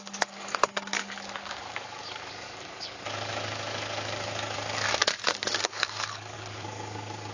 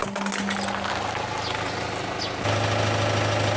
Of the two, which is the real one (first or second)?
second